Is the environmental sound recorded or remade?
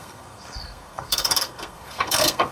remade